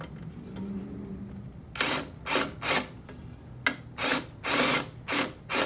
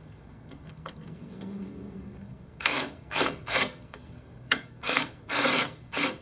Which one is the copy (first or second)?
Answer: second